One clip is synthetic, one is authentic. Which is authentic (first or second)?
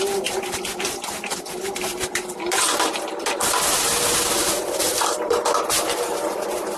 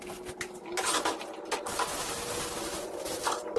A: second